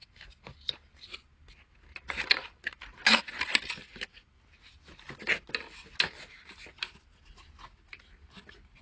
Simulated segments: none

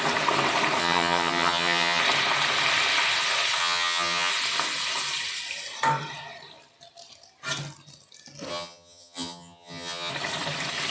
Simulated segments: 0.8-2.0; 3.6-4.3; 8.5-10.1

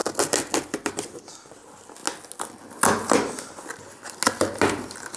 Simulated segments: none

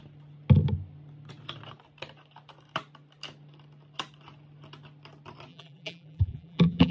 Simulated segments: 5.5-6.9

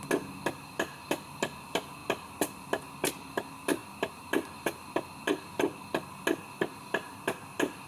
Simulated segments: none

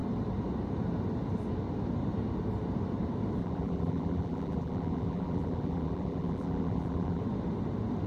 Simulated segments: 3.4-7.2

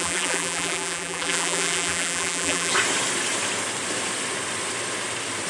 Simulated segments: 0.0-2.7